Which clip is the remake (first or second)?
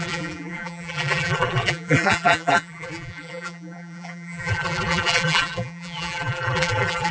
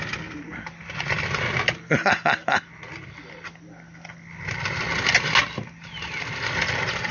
first